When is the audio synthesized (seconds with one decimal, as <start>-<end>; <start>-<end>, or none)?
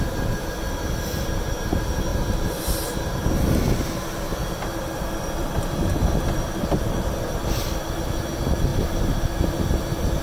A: 2.1-2.6; 4.3-6.5